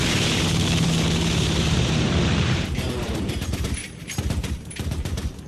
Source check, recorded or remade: remade